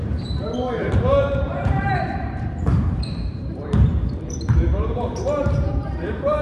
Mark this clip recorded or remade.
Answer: remade